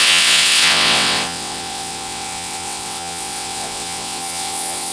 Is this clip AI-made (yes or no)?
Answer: yes